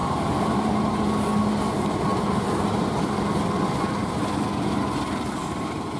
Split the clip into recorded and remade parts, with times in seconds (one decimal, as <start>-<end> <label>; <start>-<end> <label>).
0.0-0.7 remade; 0.7-2.1 recorded; 2.1-3.2 remade; 3.2-5.4 recorded; 5.4-6.0 remade